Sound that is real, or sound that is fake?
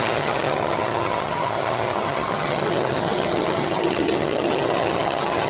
fake